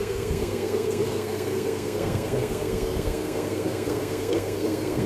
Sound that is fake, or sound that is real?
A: fake